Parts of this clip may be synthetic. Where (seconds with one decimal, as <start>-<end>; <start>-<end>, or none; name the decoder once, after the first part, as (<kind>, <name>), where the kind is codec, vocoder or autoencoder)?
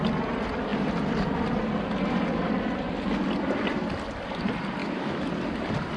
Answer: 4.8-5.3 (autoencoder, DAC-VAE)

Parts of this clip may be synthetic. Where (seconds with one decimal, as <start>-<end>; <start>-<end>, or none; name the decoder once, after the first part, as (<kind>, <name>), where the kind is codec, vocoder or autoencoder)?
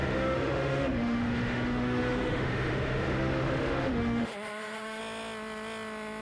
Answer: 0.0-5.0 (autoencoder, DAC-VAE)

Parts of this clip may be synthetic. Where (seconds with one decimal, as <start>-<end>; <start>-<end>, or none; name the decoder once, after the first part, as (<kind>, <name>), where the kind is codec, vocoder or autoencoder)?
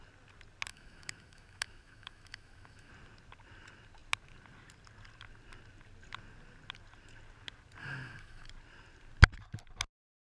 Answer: 0.7-2.9 (autoencoder, DAC-VAE); 7.8-8.5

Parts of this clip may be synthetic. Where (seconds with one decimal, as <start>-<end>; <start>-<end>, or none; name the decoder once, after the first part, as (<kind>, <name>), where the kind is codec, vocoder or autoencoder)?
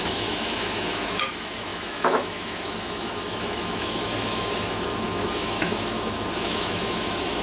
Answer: 0.0-7.4 (autoencoder, DAC-VAE)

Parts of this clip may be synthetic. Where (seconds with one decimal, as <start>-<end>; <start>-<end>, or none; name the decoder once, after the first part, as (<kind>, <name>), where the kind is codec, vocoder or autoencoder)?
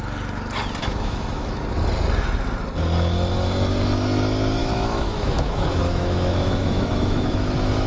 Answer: 0.8-1.6 (autoencoder, DAC-VAE); 4.6-7.9